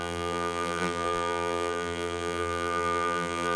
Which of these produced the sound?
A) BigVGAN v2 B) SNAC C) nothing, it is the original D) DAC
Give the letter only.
A